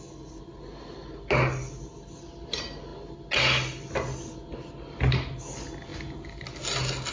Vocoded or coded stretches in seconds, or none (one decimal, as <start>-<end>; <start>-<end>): none